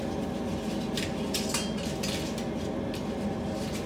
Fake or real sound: real